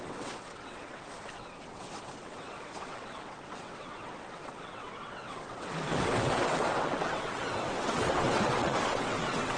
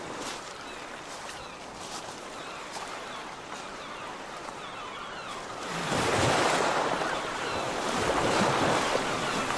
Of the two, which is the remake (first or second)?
first